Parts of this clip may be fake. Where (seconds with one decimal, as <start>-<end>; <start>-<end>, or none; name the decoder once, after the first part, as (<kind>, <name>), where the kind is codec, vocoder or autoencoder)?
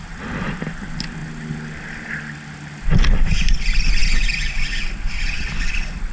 none